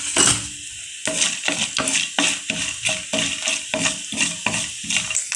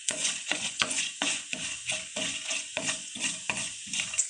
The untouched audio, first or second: first